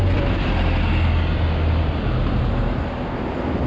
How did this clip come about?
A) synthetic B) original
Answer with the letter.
B